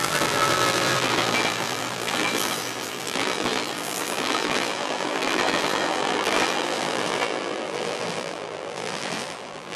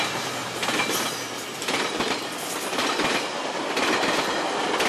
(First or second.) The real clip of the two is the second